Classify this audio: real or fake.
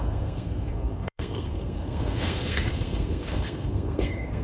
fake